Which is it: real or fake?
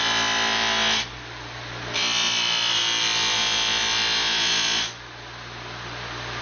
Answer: real